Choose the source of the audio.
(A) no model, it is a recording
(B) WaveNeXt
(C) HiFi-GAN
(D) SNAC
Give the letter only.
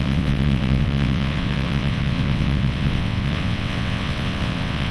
B